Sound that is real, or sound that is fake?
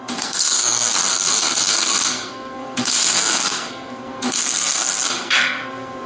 fake